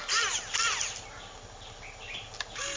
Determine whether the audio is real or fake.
real